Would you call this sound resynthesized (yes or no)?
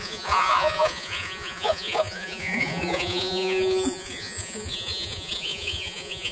yes